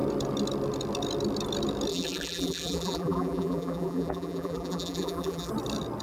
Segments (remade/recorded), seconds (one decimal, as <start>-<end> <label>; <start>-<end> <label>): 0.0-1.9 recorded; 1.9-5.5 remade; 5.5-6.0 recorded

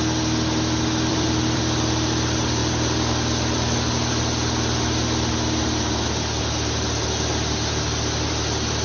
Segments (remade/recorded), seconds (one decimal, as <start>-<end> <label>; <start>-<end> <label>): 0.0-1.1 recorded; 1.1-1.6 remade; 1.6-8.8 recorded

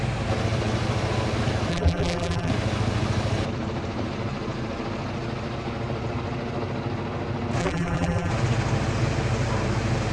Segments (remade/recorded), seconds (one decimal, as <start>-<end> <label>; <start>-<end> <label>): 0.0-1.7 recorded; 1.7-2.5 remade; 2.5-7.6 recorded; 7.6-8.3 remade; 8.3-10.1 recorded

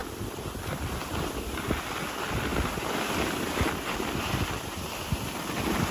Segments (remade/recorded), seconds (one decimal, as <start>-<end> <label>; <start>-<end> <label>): 0.0-1.9 remade; 1.9-2.5 recorded; 2.5-4.2 remade; 4.2-5.9 recorded

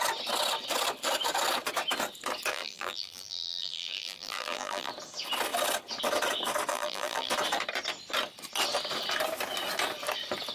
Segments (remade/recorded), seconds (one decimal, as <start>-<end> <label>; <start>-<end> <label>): 0.0-2.5 recorded; 2.5-4.9 remade; 4.9-6.7 recorded; 6.7-7.3 remade; 7.3-10.5 recorded

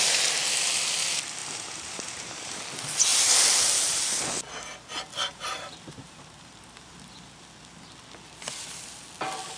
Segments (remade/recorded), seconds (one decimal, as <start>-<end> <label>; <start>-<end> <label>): 0.0-1.4 recorded; 1.4-2.6 remade; 2.6-3.1 recorded; 3.1-4.2 remade; 4.2-5.2 recorded; 5.2-7.0 remade; 7.0-9.6 recorded

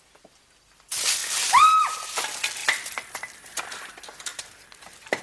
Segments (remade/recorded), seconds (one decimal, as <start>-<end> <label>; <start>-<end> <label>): 0.0-1.2 recorded; 1.2-2.2 remade; 2.2-4.3 recorded; 4.3-5.2 remade

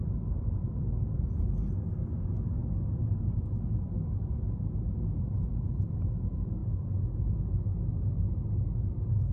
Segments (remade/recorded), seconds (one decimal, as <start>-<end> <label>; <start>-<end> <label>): 0.0-9.3 recorded